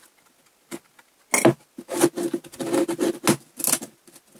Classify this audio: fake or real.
real